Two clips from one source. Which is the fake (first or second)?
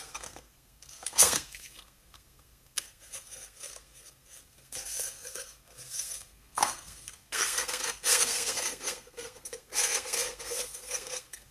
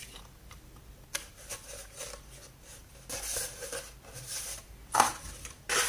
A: first